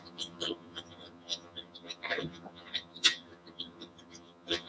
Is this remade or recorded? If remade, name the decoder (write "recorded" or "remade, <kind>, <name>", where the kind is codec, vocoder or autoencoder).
remade, vocoder, HiFi-GAN